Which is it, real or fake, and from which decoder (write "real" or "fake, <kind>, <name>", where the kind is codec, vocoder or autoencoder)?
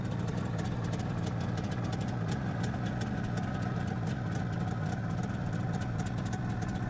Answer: real